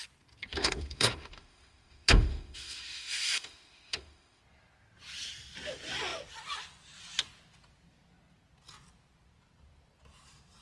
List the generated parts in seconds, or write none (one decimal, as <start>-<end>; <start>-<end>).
0.5-4.4